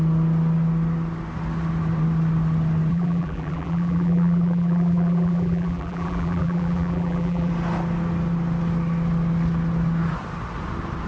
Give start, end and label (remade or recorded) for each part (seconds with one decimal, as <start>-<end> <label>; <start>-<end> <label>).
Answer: 0.0-2.9 recorded; 2.9-7.5 remade; 7.5-11.1 recorded